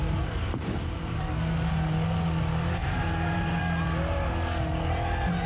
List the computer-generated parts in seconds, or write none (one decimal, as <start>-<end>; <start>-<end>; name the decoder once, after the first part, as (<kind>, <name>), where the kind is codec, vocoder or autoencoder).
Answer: 0.0-1.3 (vocoder, BigVGAN v2); 2.8-3.6